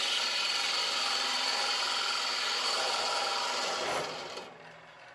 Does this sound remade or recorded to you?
remade